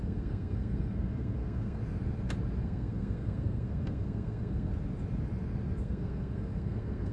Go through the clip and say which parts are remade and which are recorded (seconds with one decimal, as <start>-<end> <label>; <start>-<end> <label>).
0.0-1.8 remade; 1.8-2.6 recorded; 2.6-4.7 remade; 4.7-5.8 recorded; 5.8-7.1 remade